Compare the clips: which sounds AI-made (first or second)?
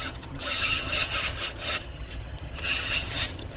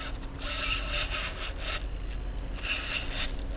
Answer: first